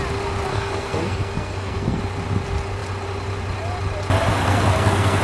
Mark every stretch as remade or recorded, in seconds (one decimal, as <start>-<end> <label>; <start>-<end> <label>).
0.0-0.5 recorded; 0.5-2.0 remade; 2.0-4.3 recorded; 4.3-5.2 remade